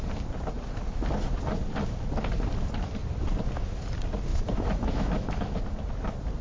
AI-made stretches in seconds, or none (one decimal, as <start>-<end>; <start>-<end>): 4.3-5.6